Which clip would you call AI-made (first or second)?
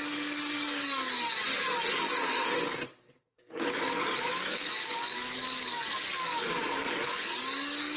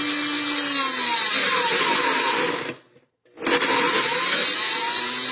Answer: first